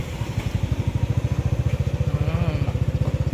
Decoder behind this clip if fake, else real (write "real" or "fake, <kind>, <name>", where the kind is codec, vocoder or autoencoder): real